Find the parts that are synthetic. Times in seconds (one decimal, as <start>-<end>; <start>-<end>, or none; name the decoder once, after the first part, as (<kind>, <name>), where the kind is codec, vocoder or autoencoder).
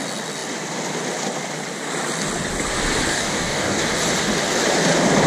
3.1-3.8 (codec, DAC)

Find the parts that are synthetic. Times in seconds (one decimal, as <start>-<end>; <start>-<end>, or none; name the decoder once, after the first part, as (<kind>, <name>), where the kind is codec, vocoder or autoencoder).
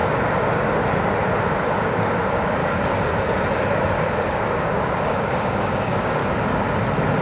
1.6-2.6 (codec, DAC); 4.3-6.2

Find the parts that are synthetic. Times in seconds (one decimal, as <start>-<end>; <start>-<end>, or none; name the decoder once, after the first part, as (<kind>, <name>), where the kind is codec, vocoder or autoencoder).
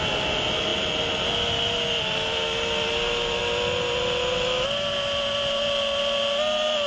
none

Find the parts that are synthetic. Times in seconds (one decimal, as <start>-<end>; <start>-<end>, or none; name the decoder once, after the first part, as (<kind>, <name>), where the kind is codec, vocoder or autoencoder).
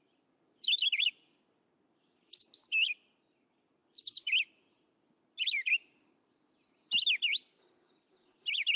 3.8-6.7 (vocoder, BigVGAN v2)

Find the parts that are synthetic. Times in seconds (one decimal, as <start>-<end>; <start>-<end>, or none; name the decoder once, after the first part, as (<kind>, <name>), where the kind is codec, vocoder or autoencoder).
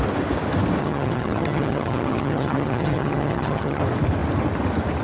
0.8-3.8 (vocoder, HiFi-GAN)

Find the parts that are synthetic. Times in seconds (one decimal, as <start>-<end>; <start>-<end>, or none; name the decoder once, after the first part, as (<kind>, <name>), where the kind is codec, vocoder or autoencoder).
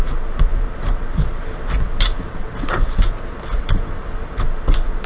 none